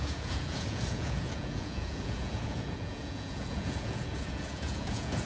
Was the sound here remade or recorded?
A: remade